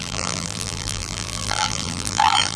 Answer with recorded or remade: remade